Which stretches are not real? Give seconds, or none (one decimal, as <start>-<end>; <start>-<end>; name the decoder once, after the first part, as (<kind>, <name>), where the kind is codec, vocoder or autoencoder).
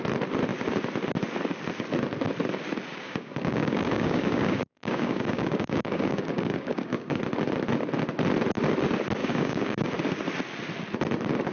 2.9-7.2 (codec, DAC); 9.2-9.9